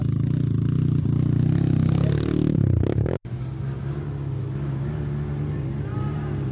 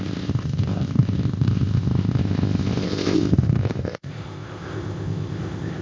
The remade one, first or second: second